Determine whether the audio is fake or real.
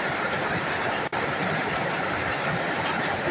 fake